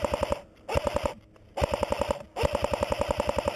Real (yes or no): yes